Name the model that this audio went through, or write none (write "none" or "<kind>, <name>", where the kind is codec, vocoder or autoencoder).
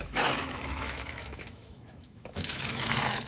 autoencoder, DAC-VAE